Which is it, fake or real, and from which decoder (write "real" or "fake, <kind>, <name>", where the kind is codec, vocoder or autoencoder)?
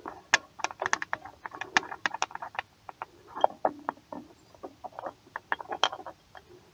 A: real